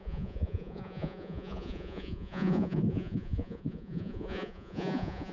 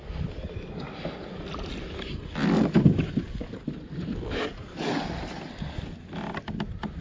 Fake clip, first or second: first